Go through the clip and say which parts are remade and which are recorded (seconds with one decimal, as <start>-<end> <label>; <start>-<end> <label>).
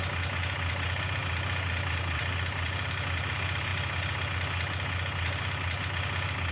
0.0-6.5 recorded